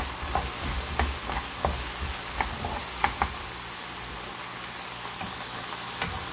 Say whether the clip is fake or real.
real